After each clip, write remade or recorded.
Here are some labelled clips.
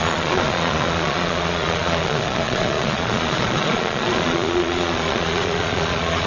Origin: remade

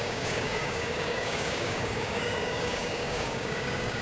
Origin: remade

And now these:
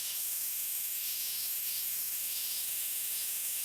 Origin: remade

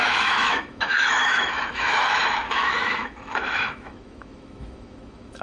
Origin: remade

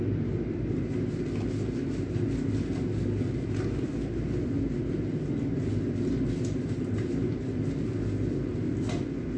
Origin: recorded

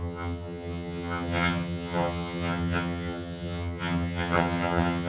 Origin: remade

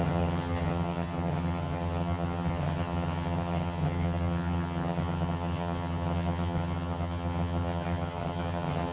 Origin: remade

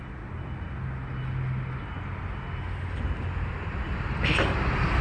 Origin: recorded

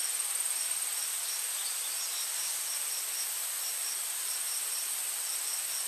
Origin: recorded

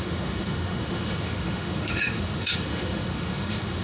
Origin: remade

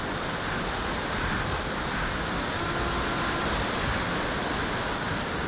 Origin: recorded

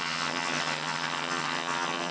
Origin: remade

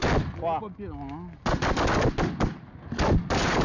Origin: recorded